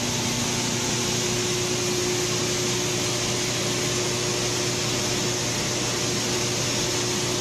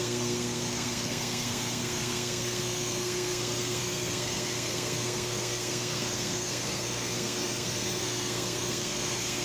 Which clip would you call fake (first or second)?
second